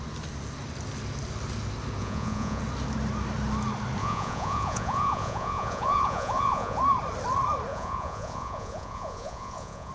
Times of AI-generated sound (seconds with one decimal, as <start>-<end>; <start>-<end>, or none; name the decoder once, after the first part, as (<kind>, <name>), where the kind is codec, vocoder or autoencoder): 2.0-2.6 (vocoder, Vocos); 4.0-6.8; 7.7-9.9